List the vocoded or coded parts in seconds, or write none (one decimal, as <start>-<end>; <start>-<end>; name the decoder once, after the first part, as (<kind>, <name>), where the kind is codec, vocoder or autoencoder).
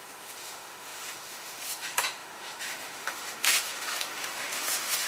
0.0-5.1 (autoencoder, DAC-VAE)